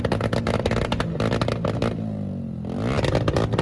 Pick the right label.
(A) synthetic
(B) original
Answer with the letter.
B